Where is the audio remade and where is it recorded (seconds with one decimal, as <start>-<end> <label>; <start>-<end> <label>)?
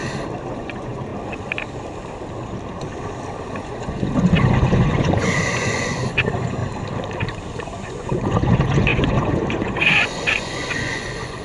0.0-0.5 recorded; 0.5-1.1 remade; 1.1-3.4 recorded; 3.4-6.6 remade; 6.6-7.6 recorded; 7.6-11.4 remade